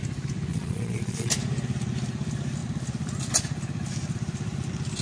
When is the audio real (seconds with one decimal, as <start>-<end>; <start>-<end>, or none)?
0.0-0.5; 1.3-5.0